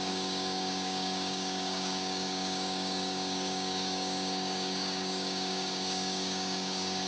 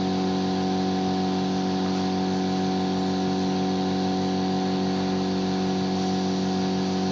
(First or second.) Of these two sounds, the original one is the second